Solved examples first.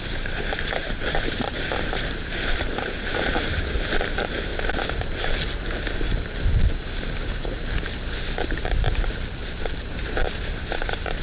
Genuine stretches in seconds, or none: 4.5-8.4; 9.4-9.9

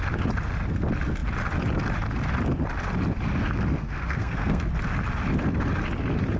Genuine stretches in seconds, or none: 0.0-3.8; 4.7-6.4

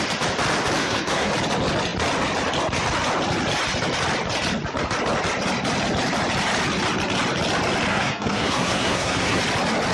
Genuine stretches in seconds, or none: 0.0-0.8; 1.3-7.9; 9.4-9.9